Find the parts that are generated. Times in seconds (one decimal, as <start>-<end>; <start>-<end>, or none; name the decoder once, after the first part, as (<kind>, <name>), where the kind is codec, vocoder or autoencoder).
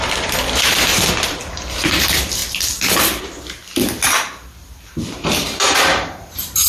0.0-2.4 (vocoder, BigVGAN v2); 3.2-3.6; 4.9-6.7